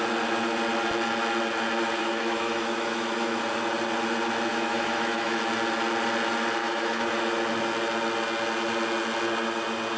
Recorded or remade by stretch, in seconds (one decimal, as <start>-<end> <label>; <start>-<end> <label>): 0.0-2.0 recorded; 2.0-3.4 remade; 3.4-4.5 recorded; 4.5-5.4 remade; 5.4-6.6 recorded; 6.6-7.1 remade; 7.1-10.0 recorded